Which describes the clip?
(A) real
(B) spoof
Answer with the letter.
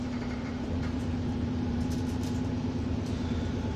B